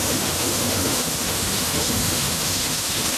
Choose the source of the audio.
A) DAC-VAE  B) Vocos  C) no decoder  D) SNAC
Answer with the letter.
A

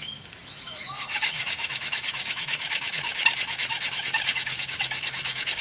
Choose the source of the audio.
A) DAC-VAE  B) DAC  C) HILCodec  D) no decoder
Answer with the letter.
A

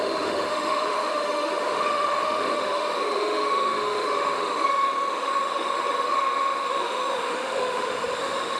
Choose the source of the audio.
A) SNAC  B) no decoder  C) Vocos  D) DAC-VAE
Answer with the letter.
D